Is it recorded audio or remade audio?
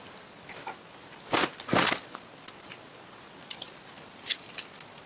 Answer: recorded